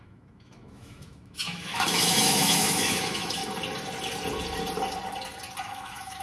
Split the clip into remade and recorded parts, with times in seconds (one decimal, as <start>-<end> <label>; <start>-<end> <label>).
0.0-3.4 remade; 3.4-5.6 recorded; 5.6-6.2 remade